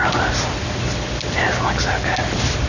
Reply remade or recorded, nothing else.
recorded